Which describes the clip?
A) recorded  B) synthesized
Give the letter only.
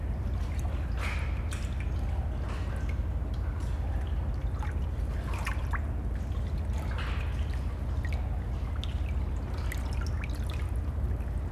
A